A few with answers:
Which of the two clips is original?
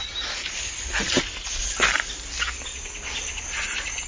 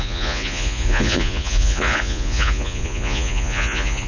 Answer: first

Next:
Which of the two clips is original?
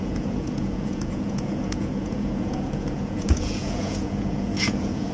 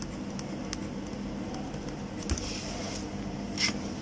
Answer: second